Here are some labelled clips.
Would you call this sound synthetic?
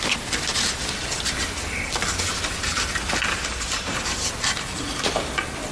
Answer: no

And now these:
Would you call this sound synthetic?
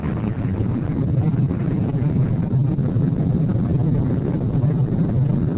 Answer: no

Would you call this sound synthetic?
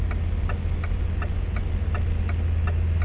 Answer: no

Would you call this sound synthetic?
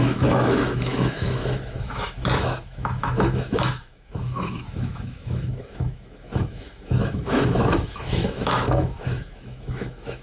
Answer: yes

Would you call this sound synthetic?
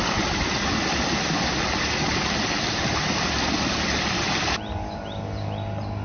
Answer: no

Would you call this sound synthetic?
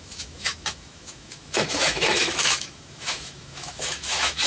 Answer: yes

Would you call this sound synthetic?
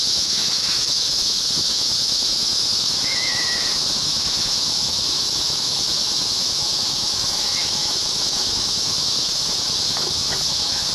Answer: yes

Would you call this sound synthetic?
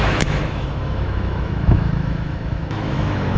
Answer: yes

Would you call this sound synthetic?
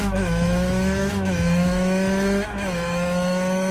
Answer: yes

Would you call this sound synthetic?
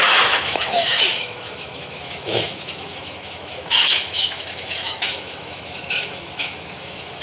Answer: yes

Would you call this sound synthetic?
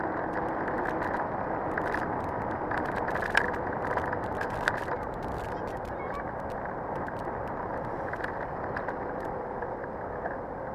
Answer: no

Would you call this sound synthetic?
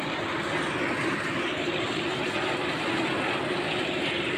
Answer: no